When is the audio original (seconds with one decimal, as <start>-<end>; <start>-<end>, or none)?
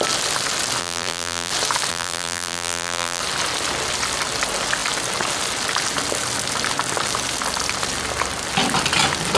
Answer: 0.0-0.8; 1.5-1.9; 3.2-9.4